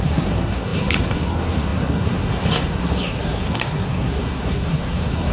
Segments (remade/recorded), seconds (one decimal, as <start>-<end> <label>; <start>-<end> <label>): 0.0-5.3 remade